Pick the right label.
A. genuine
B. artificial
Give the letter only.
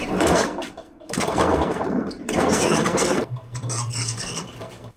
B